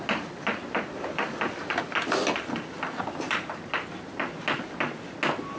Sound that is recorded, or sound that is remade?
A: recorded